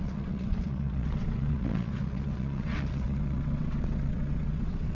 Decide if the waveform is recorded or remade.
remade